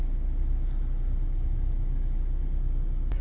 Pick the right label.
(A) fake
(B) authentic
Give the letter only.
B